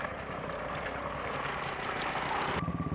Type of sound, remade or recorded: recorded